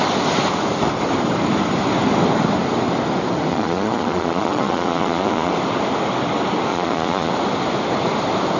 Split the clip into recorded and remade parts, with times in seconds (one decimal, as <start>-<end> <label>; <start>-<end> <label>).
0.0-3.5 recorded; 3.5-5.5 remade; 5.5-6.7 recorded; 6.7-7.3 remade; 7.3-8.6 recorded